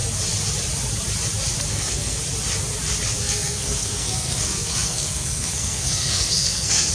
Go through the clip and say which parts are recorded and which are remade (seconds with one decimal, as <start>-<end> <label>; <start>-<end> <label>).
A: 0.0-1.7 recorded; 1.7-2.2 remade; 2.2-3.2 recorded; 3.2-6.9 remade